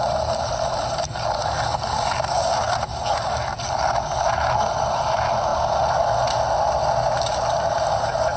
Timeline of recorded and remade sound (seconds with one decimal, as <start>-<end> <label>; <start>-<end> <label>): 0.0-8.4 recorded